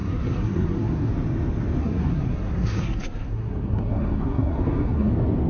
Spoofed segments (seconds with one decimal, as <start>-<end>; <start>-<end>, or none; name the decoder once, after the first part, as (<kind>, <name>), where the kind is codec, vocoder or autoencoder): 0.0-1.1 (codec, SNAC); 1.8-5.1